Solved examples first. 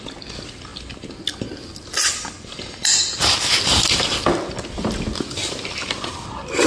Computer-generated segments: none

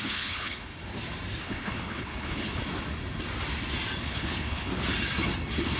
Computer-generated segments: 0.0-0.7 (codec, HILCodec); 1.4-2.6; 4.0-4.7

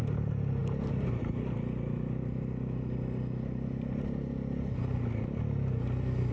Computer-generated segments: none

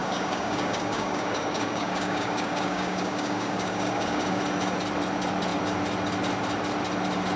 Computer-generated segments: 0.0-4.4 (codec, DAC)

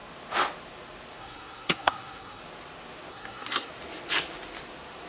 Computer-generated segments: 1.2-2.4 (codec, SNAC); 3.1-3.7

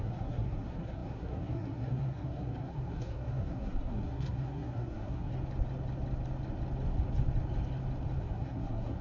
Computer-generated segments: 0.0-5.3 (codec, SNAC); 8.2-9.0

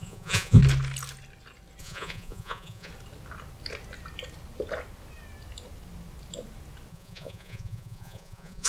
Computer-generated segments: 0.0-0.6 (vocoder, Vocos); 1.8-2.9; 6.9-8.7

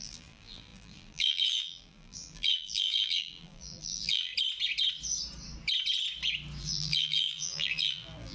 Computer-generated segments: 0.0-4.3 (vocoder, BigVGAN v2); 6.6-8.3